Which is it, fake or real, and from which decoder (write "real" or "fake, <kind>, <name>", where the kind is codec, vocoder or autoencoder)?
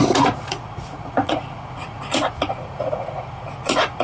fake, vocoder, Vocos